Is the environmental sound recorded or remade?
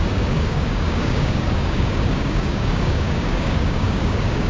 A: remade